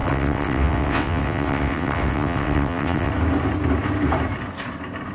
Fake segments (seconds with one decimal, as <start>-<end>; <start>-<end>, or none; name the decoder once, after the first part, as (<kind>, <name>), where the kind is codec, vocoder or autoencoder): 0.0-3.1 (vocoder, WaveNeXt)

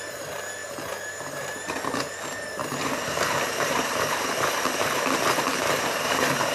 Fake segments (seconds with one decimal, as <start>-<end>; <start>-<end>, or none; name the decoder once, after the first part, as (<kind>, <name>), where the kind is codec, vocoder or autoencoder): 0.0-6.5 (vocoder, BigVGAN v2)

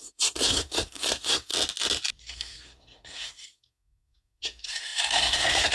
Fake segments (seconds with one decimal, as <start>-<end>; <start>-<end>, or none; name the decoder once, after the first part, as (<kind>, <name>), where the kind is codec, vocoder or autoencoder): 0.0-1.5 (codec, SNAC); 2.2-5.7

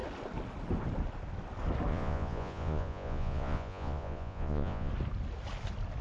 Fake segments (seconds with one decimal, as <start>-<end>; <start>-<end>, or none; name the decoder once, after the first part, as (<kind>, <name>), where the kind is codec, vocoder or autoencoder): 1.9-4.9 (vocoder, Vocos)

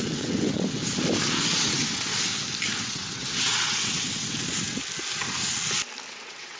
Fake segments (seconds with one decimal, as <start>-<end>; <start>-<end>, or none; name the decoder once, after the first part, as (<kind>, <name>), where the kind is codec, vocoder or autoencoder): 0.0-0.8 (vocoder, WaveNeXt); 1.4-2.1; 2.8-4.8; 6.1-6.6

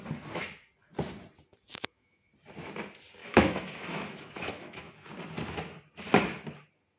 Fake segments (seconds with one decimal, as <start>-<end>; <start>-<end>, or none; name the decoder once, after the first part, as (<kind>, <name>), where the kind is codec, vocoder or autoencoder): 1.7-2.3 (autoencoder, DAC-VAE); 3.2-5.1

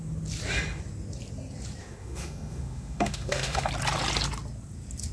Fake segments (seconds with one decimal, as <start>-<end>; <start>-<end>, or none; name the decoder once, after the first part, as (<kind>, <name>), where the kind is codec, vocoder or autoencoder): 1.8-3.7 (autoencoder, DAC-VAE)

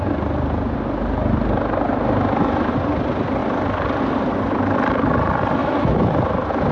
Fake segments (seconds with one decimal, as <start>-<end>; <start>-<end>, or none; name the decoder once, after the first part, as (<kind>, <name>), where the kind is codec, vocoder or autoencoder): 5.6-6.1 (autoencoder, DAC-VAE)